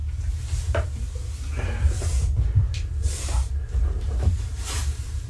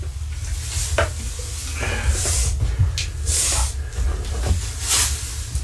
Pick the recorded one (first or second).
second